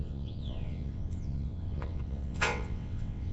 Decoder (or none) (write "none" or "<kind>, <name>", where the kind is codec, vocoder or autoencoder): vocoder, WaveNeXt